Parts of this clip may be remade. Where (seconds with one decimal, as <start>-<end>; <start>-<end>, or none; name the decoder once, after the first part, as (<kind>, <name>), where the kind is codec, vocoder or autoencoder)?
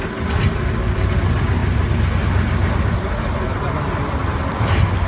none